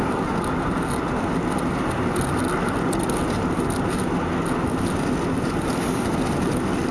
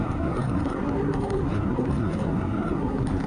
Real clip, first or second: first